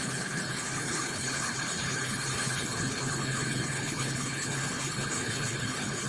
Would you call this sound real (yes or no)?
no